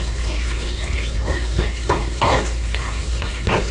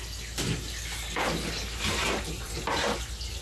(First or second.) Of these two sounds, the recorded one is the second